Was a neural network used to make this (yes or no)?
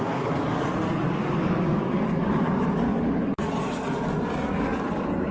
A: yes